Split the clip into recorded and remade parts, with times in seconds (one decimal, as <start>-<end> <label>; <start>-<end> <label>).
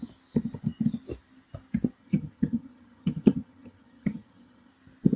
0.0-2.0 recorded; 2.0-4.7 remade; 4.7-5.2 recorded